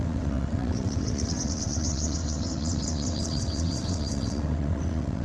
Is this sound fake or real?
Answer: fake